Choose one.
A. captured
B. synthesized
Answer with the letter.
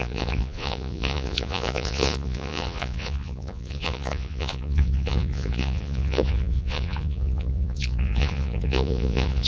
B